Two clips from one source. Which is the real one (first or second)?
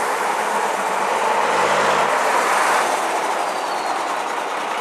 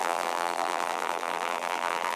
first